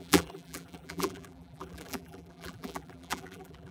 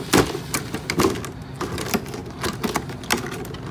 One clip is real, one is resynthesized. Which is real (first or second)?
second